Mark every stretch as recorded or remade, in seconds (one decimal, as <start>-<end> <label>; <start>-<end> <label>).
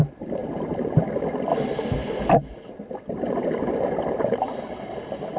0.0-5.4 recorded